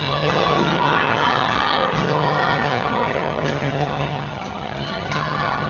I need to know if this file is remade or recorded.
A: remade